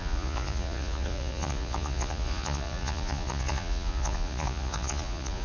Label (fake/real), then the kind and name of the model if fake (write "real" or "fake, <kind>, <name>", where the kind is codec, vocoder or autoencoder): fake, vocoder, Vocos